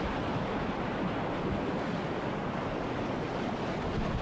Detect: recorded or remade recorded